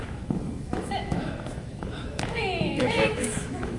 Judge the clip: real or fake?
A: fake